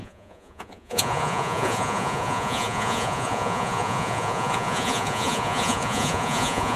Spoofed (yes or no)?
yes